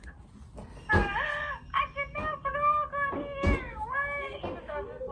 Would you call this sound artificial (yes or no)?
no